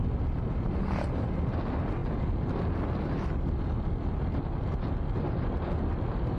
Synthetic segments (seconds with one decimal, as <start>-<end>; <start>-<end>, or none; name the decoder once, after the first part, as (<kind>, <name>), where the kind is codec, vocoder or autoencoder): none